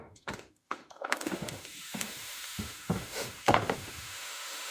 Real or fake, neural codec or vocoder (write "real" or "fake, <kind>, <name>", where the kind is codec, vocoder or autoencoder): fake, autoencoder, DAC-VAE